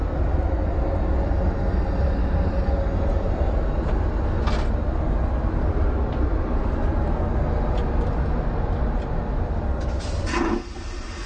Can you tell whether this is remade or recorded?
recorded